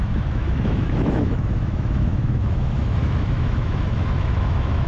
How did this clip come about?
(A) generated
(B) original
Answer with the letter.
A